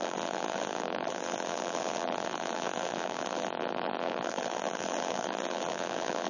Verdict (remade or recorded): remade